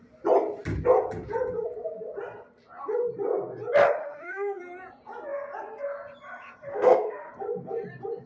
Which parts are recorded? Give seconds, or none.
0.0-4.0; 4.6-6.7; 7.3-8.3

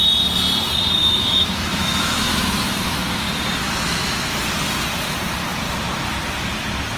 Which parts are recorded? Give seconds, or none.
0.0-1.0; 3.2-3.6; 4.3-7.0

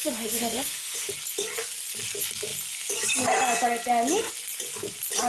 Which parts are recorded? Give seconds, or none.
1.1-5.3

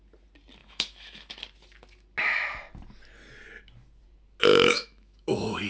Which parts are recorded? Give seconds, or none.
0.0-0.6; 1.3-4.5